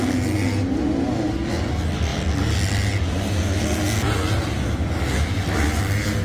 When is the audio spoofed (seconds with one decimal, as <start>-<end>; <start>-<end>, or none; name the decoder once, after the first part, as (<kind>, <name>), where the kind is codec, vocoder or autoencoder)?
none